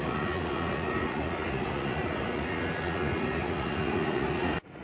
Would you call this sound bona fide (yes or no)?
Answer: no